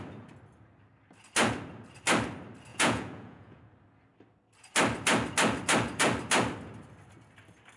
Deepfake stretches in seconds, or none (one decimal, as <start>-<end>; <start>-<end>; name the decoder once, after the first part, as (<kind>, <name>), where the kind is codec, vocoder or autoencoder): 2.7-3.6 (vocoder, Vocos)